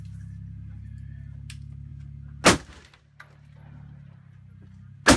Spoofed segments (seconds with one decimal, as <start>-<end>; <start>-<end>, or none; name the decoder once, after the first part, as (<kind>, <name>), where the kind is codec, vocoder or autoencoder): none